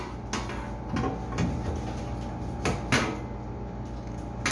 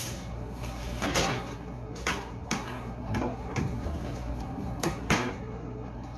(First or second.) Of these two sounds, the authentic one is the first